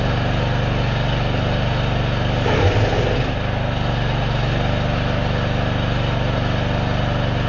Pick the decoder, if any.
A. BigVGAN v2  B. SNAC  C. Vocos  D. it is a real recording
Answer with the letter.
D